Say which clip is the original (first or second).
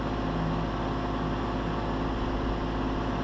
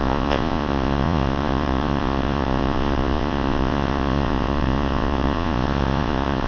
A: first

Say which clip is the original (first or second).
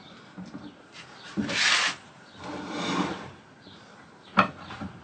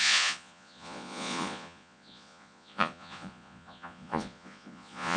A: first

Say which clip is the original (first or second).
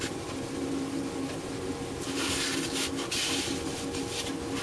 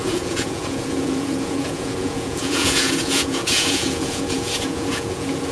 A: first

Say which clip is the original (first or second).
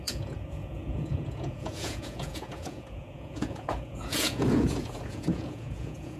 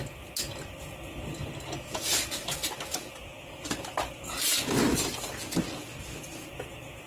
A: second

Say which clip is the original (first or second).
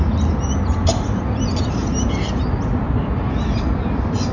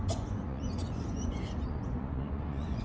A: first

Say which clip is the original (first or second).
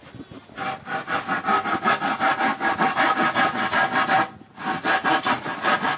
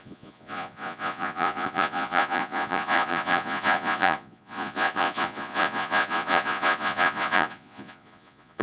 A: first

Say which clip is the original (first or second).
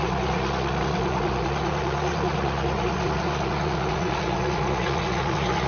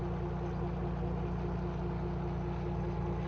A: second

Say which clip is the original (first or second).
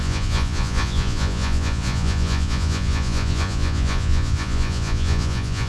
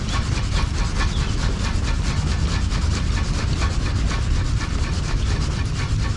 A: second